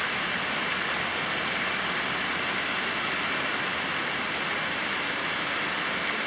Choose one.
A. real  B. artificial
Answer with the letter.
A